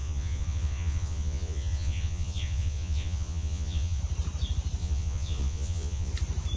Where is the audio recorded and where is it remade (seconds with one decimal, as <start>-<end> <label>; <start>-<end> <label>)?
0.0-4.0 remade; 4.0-4.8 recorded; 4.8-6.1 remade; 6.1-6.6 recorded